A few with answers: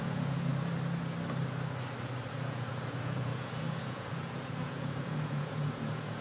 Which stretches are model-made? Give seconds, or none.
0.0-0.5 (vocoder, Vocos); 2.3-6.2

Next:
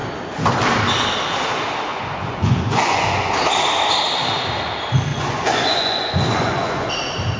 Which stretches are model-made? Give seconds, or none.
1.9-3.3 (vocoder, Vocos); 5.1-6.9

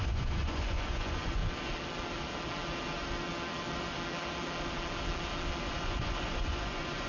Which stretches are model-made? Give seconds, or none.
0.0-1.4 (vocoder, Vocos); 5.6-7.1

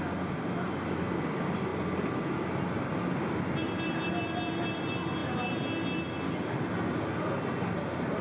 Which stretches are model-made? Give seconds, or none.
none